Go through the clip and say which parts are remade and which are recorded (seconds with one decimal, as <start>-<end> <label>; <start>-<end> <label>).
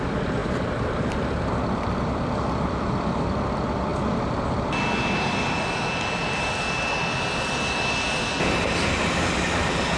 0.0-0.4 recorded; 0.4-1.5 remade; 1.5-10.0 recorded